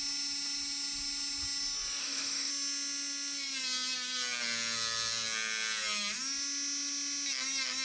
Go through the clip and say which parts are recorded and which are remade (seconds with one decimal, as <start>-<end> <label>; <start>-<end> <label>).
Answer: 0.0-2.0 recorded; 2.0-2.5 remade; 2.5-7.8 recorded